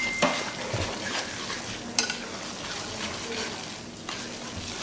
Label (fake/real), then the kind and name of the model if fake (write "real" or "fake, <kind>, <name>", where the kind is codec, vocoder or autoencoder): real